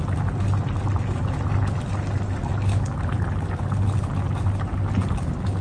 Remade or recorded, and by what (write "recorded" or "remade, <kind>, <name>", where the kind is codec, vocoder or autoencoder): recorded